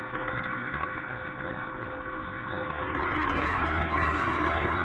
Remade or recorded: remade